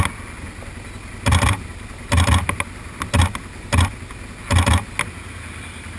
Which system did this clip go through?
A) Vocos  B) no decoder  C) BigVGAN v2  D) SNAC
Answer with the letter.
B